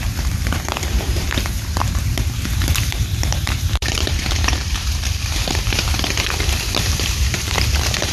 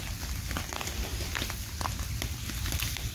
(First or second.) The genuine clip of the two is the second